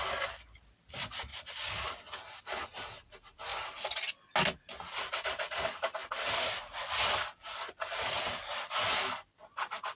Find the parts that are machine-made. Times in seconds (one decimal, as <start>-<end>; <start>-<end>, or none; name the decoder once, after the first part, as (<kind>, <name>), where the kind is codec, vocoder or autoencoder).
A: none